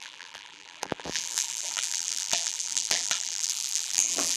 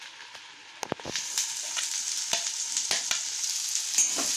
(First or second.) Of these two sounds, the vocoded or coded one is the first